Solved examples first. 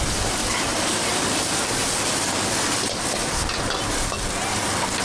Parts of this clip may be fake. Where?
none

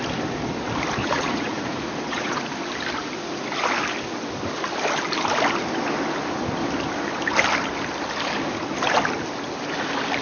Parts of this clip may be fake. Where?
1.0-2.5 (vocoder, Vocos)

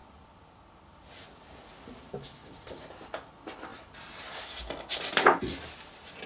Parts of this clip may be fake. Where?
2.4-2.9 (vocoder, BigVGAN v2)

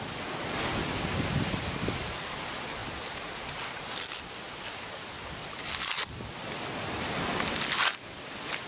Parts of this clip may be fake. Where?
none